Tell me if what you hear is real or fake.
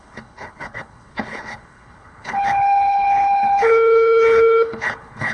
fake